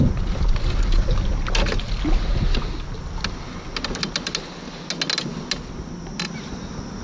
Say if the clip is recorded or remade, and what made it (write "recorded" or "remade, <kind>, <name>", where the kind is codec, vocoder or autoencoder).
recorded